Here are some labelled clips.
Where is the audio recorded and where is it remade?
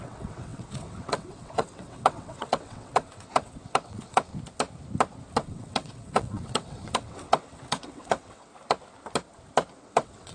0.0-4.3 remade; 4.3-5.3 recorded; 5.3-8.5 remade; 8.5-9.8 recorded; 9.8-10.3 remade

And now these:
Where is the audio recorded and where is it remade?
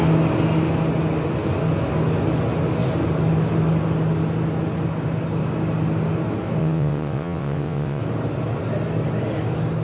0.0-6.6 recorded; 6.6-8.0 remade; 8.0-9.8 recorded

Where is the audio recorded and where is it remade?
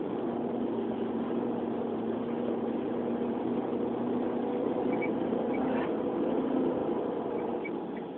0.0-8.2 recorded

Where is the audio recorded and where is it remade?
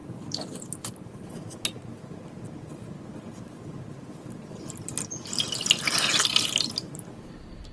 0.0-7.7 recorded